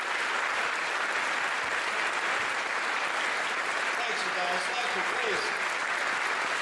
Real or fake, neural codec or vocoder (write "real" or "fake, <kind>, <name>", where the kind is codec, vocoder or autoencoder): real